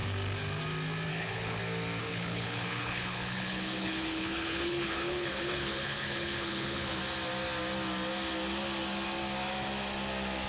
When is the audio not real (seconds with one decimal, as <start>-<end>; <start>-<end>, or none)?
1.1-1.6; 2.0-7.0